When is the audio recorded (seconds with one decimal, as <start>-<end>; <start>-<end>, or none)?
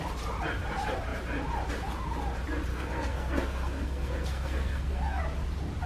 0.0-2.7; 5.2-5.9